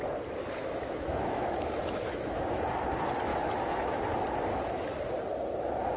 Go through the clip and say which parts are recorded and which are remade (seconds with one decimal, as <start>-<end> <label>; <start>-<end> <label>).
0.0-0.6 recorded; 0.6-2.7 remade; 2.7-3.3 recorded; 3.3-4.0 remade; 4.0-4.5 recorded; 4.5-5.0 remade; 5.0-6.0 recorded